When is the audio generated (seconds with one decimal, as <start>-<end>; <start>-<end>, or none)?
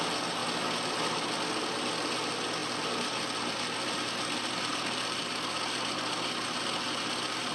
none